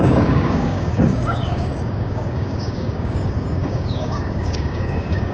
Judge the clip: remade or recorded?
remade